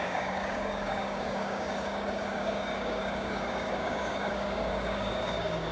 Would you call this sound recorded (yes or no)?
no